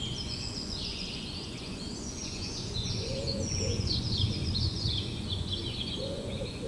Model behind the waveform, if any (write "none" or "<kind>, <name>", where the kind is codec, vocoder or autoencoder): vocoder, Vocos